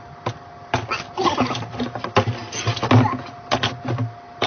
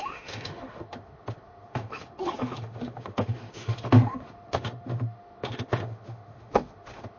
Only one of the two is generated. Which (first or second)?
second